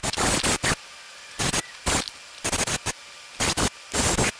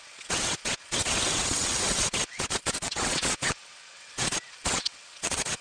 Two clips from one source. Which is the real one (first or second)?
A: first